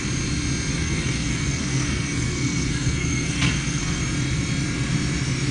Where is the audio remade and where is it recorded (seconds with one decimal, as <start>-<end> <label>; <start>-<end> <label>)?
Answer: 0.0-0.7 recorded; 0.7-4.0 remade; 4.0-5.5 recorded